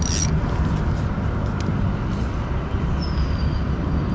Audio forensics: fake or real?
real